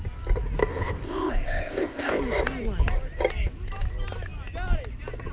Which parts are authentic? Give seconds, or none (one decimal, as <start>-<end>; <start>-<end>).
0.0-0.7; 2.2-5.3